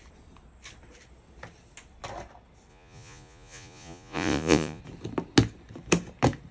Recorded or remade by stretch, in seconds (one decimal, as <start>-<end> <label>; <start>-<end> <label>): 0.0-2.7 recorded; 2.7-4.8 remade; 4.8-6.5 recorded